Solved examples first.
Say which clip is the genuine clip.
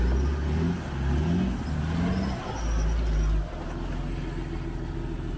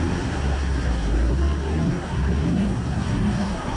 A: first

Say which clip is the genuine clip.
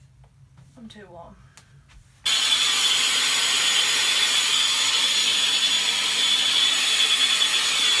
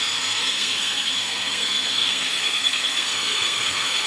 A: first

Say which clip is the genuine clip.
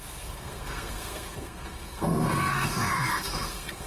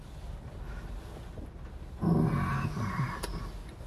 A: second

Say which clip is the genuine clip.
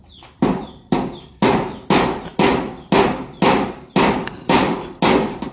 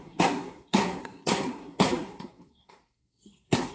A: first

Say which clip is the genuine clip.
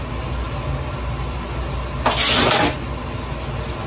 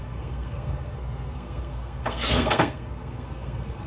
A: first